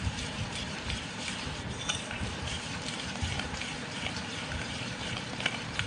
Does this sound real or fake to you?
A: fake